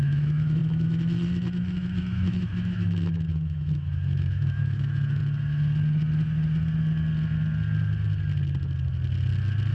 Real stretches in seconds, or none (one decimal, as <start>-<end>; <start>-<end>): 5.2-9.7